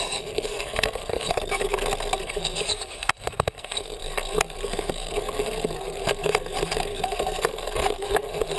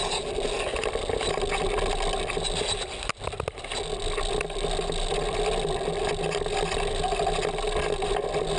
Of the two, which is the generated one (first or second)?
first